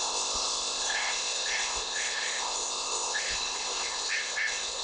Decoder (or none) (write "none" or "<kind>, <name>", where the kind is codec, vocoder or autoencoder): codec, ZipCodec